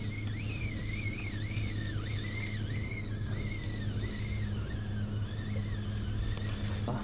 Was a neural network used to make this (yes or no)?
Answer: no